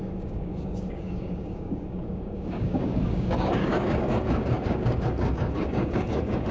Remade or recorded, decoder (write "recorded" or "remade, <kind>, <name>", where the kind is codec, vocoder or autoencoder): remade, codec, DAC